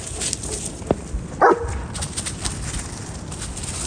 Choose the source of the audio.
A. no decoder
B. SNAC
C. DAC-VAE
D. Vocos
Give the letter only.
A